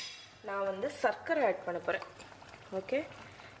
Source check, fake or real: real